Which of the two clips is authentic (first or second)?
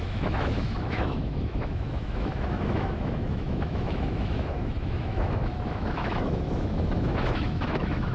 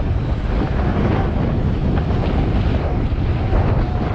second